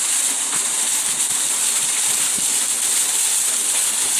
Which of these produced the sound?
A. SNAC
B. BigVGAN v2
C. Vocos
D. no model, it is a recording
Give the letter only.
D